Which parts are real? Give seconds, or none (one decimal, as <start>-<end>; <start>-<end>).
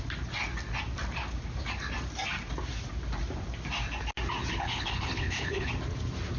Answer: 0.0-4.5; 5.7-6.4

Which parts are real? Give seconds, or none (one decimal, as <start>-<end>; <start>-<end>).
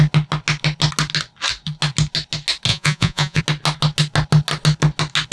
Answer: 0.0-2.7; 3.4-5.3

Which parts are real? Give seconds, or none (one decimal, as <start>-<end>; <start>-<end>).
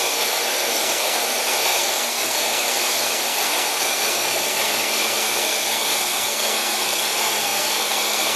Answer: none